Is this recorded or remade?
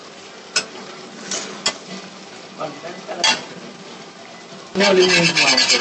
recorded